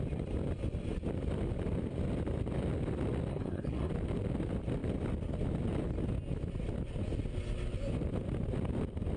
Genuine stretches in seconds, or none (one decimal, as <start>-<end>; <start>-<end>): 0.0-3.3; 3.9-9.2